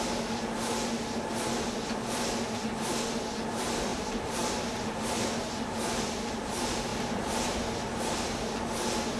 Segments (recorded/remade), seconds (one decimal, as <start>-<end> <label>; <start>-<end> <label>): 0.0-3.9 recorded; 3.9-4.5 remade; 4.5-6.9 recorded; 6.9-7.4 remade; 7.4-9.2 recorded